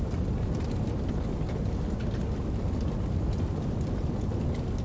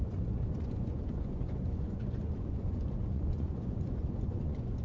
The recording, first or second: first